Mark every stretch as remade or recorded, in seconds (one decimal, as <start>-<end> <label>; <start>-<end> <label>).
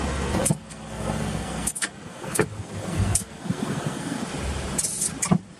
0.0-4.2 remade; 4.2-5.6 recorded